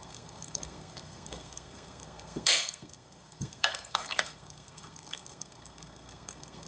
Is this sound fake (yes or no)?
yes